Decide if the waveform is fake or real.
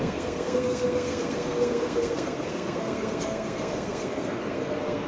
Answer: fake